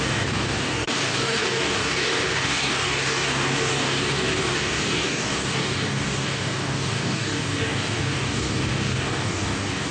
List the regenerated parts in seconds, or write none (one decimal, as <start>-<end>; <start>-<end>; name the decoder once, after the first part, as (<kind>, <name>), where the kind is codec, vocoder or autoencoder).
0.0-9.9 (codec, DAC)